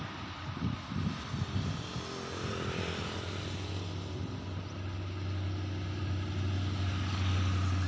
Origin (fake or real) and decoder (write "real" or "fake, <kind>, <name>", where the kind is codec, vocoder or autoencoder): real